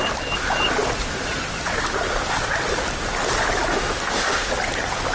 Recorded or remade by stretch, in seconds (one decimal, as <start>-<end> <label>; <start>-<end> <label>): 0.0-3.7 recorded; 3.7-4.5 remade; 4.5-5.1 recorded